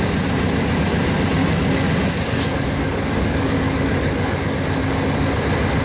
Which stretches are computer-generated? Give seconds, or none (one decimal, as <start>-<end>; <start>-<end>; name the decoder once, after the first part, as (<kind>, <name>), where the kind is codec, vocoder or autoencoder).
1.4-4.7 (codec, DAC)